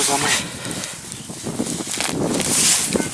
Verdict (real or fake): real